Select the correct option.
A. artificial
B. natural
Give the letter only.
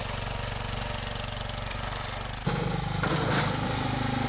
B